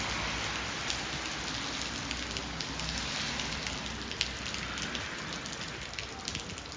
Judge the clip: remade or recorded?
recorded